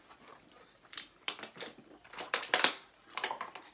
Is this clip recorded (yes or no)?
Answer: yes